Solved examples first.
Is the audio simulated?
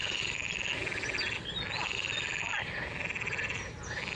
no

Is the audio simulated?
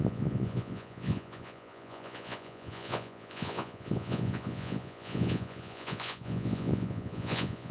yes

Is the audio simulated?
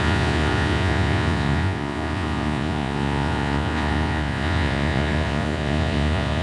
yes